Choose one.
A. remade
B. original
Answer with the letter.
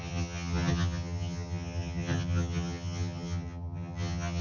A